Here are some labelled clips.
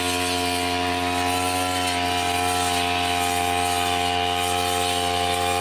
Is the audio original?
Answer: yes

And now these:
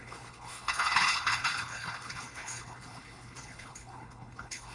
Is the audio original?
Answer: no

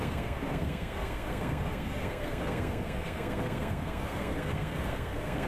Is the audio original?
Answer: no